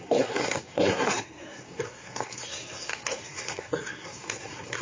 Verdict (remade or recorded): remade